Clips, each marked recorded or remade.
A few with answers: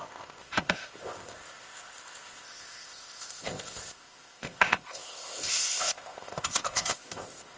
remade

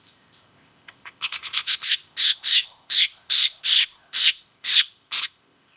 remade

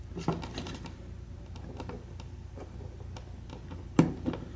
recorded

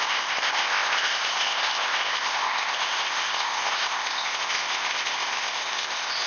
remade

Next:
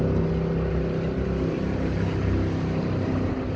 recorded